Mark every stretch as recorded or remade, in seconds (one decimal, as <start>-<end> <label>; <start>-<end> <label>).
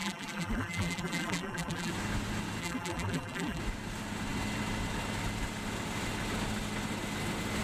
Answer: 0.0-1.9 remade; 1.9-2.6 recorded; 2.6-3.6 remade; 3.6-7.6 recorded